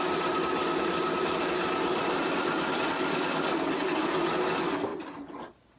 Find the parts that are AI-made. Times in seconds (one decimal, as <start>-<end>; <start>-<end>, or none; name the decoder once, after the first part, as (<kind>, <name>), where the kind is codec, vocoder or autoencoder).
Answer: 3.1-3.7 (codec, DAC)